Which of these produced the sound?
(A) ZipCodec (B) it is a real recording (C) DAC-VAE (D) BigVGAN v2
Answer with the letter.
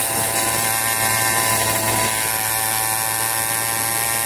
B